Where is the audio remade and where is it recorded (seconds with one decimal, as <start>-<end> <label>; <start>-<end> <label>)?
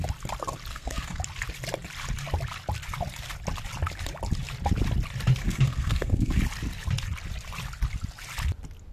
0.0-0.7 recorded; 0.7-1.2 remade; 1.2-5.4 recorded; 5.4-6.4 remade; 6.4-8.9 recorded